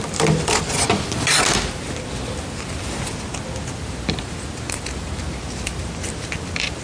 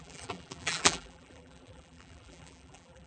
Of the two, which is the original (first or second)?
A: first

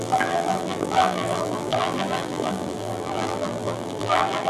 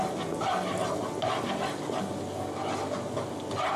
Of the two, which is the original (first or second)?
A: second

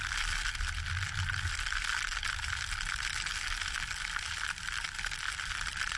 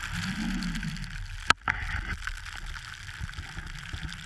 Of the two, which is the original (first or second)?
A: second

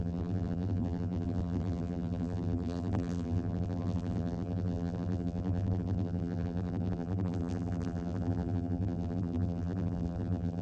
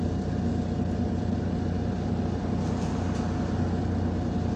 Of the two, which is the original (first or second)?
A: second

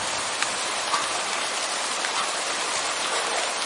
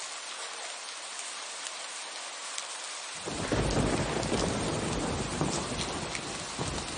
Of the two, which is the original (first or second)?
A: second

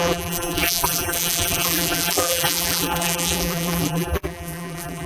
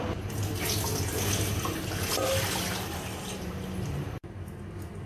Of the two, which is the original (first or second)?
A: second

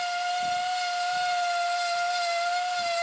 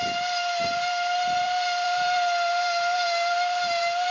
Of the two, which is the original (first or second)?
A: first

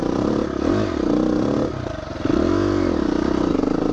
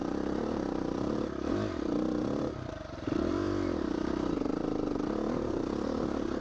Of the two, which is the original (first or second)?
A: first